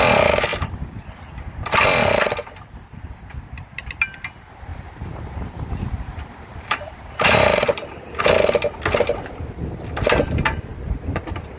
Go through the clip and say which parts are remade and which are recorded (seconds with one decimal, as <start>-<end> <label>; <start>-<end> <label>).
0.0-4.7 recorded; 4.7-8.2 remade; 8.2-11.6 recorded